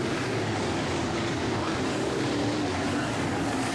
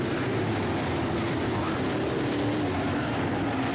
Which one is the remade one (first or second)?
first